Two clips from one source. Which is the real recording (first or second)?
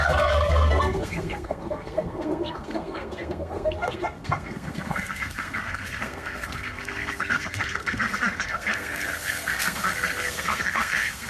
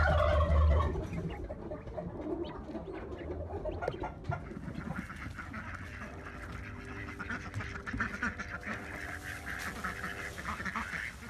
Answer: second